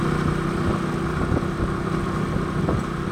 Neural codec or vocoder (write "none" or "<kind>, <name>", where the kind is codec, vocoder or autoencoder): none